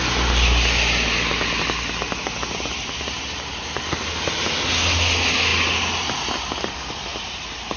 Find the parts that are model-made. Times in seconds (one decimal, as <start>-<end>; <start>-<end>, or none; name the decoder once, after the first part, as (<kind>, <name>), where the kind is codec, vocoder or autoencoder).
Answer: 7.1-7.8 (vocoder, BigVGAN v2)